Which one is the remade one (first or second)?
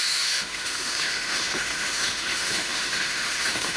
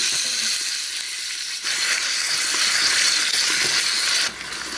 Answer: first